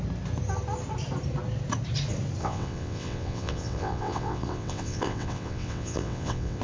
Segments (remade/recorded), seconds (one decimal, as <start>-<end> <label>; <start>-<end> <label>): 0.0-2.4 recorded; 2.4-6.6 remade